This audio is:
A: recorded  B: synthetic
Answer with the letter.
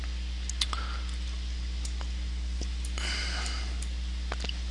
A